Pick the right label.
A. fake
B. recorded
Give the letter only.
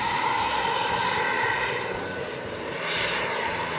A